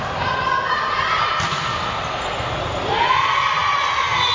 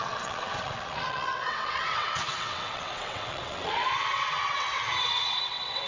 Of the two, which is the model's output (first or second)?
second